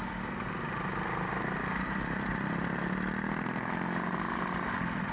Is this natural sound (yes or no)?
yes